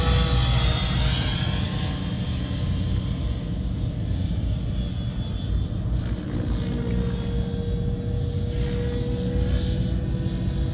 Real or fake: real